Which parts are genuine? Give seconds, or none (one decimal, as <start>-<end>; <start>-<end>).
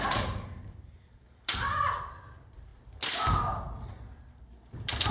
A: 2.7-4.4